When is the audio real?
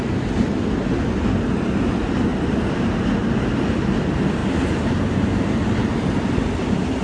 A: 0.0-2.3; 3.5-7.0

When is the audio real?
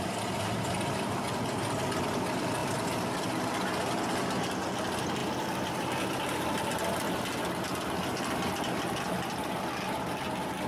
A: 0.0-10.7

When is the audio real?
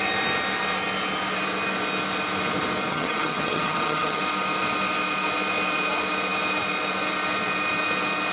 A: 0.0-2.9; 4.2-8.3